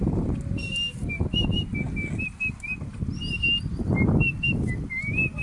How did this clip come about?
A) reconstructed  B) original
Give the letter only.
B